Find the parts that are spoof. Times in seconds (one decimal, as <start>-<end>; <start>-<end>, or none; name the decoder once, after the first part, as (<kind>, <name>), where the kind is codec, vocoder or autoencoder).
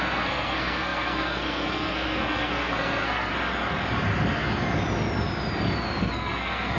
0.0-3.3 (codec, SNAC); 6.0-6.8